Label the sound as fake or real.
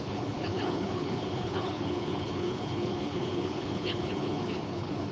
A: fake